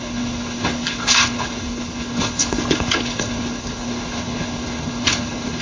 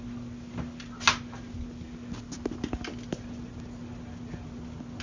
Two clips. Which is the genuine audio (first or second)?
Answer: second